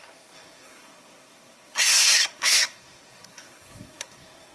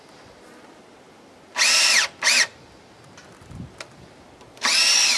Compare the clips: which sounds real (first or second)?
second